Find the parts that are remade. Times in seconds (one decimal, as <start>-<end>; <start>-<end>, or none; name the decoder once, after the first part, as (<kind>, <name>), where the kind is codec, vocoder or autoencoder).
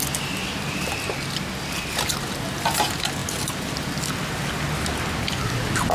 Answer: none